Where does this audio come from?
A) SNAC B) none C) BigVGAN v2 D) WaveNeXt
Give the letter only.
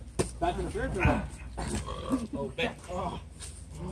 B